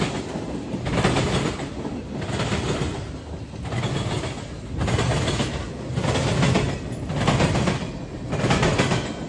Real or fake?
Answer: real